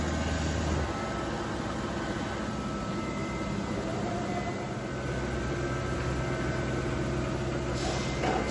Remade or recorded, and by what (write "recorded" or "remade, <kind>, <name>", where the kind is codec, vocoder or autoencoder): recorded